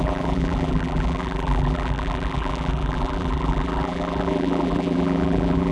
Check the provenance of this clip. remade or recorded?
remade